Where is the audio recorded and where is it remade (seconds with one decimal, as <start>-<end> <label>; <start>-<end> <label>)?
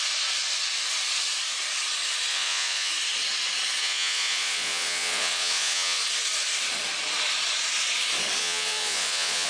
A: 0.0-2.3 recorded; 2.3-2.9 remade; 2.9-3.8 recorded; 3.8-6.0 remade; 6.0-8.4 recorded; 8.4-9.5 remade